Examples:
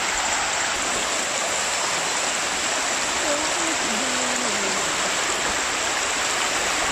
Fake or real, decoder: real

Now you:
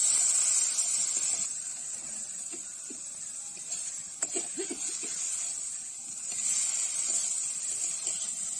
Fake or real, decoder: real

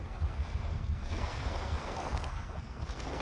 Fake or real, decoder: fake, codec, SNAC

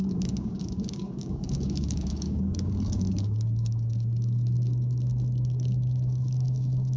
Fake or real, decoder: fake, codec, DAC